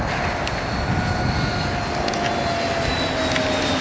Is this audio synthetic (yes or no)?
no